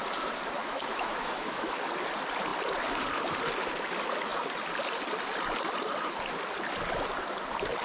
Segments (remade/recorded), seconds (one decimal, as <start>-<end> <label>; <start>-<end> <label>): 0.0-0.6 recorded; 0.6-1.8 remade; 1.8-7.8 recorded